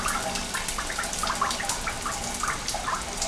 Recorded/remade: recorded